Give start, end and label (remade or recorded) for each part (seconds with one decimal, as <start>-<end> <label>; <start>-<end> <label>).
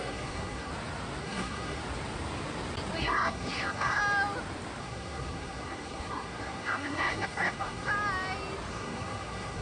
0.0-0.7 remade; 0.7-1.2 recorded; 1.2-1.8 remade; 1.8-3.0 recorded; 3.0-4.0 remade; 4.0-4.8 recorded; 4.8-7.9 remade; 7.9-8.7 recorded; 8.7-9.6 remade